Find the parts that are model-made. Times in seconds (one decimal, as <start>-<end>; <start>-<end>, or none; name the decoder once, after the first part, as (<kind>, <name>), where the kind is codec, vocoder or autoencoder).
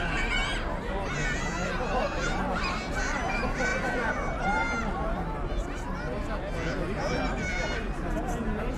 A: none